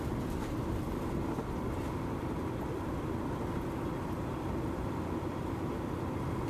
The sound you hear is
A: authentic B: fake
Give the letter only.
B